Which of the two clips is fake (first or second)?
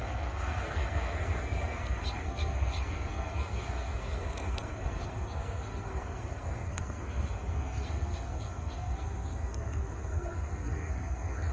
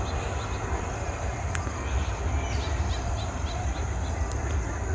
first